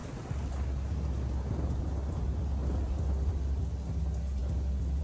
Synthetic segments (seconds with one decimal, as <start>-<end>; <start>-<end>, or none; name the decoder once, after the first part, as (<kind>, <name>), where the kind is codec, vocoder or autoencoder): none